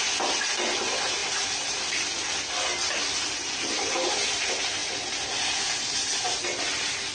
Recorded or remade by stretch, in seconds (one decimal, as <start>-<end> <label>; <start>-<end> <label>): 0.0-1.2 recorded; 1.2-3.9 remade; 3.9-7.1 recorded